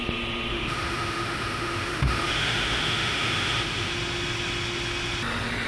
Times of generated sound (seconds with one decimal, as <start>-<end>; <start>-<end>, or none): 0.5-3.9